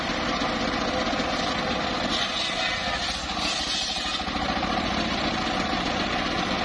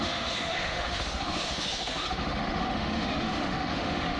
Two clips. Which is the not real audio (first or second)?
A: second